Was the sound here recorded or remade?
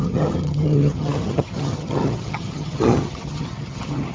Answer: remade